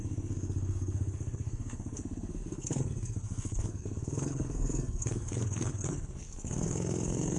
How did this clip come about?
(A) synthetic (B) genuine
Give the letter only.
A